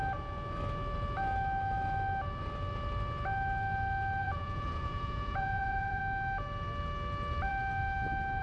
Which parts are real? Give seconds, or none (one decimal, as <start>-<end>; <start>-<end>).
0.0-4.2; 6.0-8.4